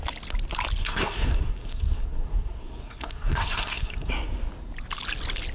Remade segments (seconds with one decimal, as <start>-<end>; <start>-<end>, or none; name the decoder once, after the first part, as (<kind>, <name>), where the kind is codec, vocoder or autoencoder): 0.8-4.1 (codec, SNAC)